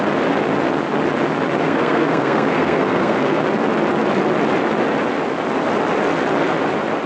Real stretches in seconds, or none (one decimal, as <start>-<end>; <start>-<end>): 0.0-1.6; 3.4-7.1